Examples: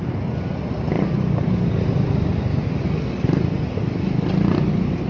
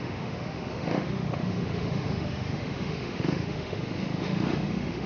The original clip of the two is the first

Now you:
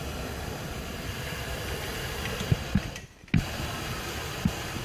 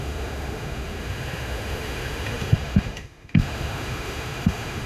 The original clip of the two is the first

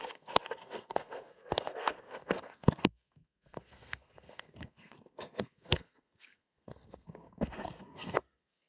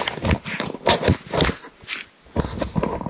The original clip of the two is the second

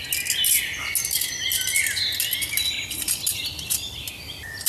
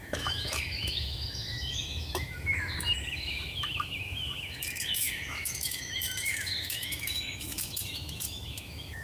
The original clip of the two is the first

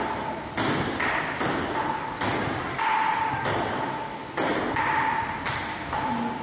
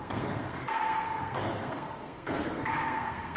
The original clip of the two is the first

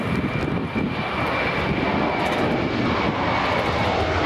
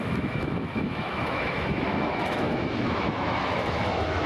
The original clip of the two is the first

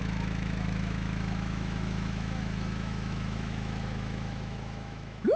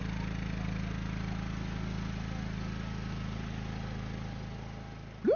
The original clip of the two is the second